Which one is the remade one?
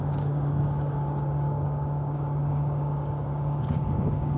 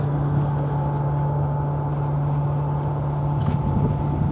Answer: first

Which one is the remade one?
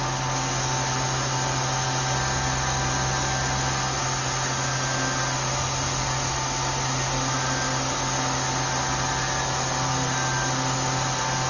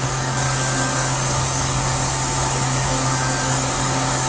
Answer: second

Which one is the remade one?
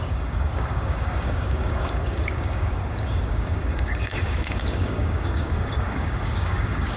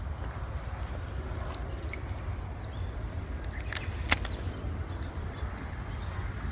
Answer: first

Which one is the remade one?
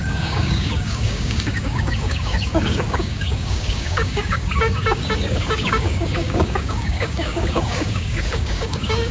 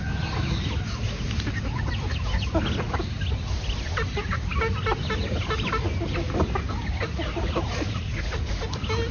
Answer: first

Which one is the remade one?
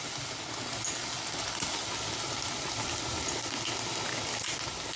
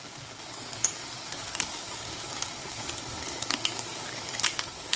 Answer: second